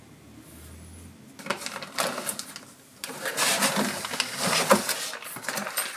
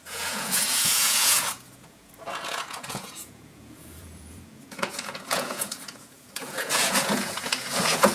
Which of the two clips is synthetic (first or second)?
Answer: second